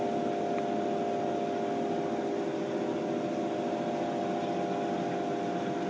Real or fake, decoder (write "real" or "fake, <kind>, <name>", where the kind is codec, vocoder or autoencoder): real